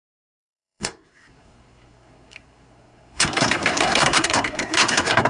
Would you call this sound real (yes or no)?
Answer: no